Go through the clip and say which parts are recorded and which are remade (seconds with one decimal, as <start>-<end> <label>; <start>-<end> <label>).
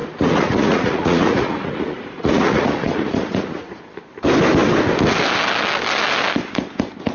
0.0-3.8 remade; 3.8-7.1 recorded